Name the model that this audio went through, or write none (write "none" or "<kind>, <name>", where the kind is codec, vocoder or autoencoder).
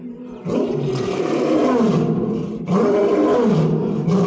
none